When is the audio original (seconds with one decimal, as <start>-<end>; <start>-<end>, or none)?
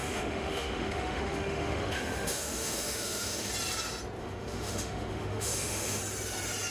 3.5-4.2; 6.0-6.7